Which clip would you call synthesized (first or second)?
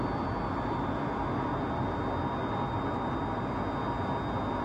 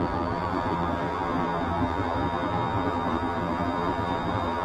second